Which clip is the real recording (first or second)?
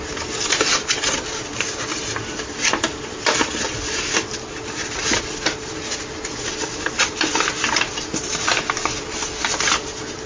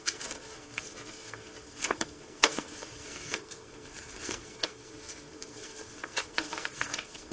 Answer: first